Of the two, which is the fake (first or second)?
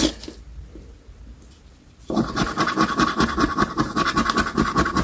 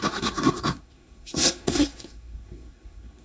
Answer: second